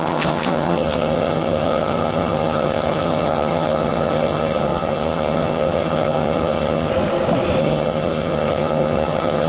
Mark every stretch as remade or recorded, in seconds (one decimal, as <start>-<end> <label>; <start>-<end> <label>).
0.0-6.9 remade; 6.9-7.6 recorded; 7.6-9.5 remade